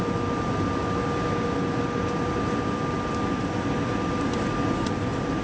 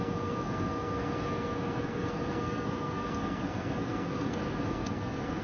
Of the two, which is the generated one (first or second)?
second